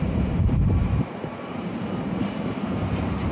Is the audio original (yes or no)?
no